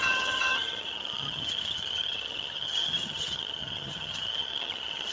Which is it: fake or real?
fake